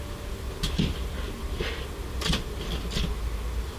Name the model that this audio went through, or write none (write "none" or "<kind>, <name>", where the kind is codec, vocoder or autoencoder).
none